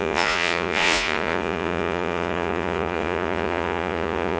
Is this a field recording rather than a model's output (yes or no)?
no